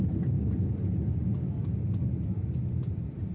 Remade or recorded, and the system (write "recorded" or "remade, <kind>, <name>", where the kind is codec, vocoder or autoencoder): recorded